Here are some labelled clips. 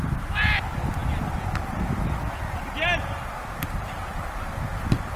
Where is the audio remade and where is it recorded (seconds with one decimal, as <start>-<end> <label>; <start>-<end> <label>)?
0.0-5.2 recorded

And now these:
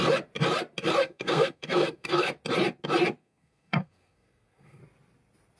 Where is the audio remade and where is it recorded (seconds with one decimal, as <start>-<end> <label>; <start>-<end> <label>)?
0.0-1.0 recorded; 1.0-2.3 remade; 2.3-3.2 recorded; 3.2-4.8 remade; 4.8-5.6 recorded

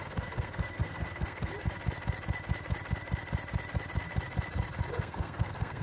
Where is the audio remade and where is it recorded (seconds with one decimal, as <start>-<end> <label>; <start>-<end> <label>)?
0.0-1.5 remade; 1.5-5.0 recorded; 5.0-5.8 remade

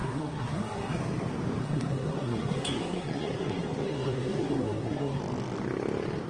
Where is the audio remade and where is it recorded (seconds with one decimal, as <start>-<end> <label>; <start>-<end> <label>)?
0.0-1.0 remade; 1.0-1.6 recorded; 1.6-5.2 remade; 5.2-6.3 recorded

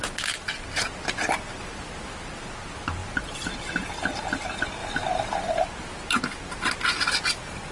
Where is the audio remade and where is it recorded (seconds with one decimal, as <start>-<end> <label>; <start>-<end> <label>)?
0.0-7.7 recorded